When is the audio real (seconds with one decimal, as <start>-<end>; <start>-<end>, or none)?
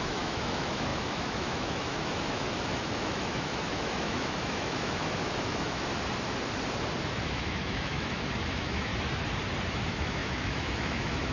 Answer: 5.9-7.2; 8.9-9.7